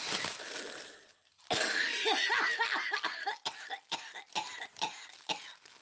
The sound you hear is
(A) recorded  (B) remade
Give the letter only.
A